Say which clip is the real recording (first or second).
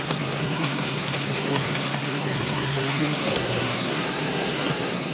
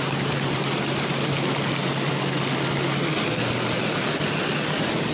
second